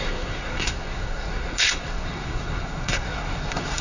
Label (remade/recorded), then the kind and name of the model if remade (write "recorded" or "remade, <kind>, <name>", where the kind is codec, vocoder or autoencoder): remade, codec, SNAC